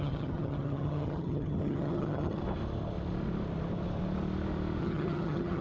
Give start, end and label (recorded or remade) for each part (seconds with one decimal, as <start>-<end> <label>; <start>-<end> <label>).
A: 0.0-2.4 remade; 2.4-4.8 recorded; 4.8-5.6 remade